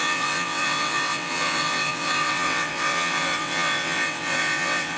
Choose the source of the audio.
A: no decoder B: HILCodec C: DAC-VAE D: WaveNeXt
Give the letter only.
D